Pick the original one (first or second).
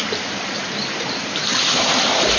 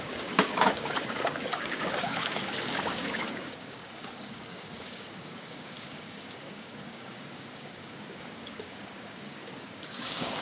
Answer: first